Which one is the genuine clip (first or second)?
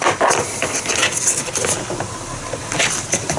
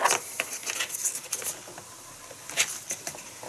second